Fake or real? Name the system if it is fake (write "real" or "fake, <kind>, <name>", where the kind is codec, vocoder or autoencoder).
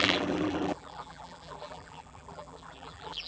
fake, vocoder, BigVGAN v2